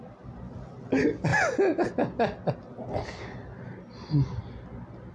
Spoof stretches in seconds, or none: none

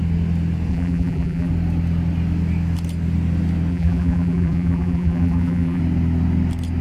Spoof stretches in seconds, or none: 0.7-1.5 (vocoder, BigVGAN v2); 3.7-5.8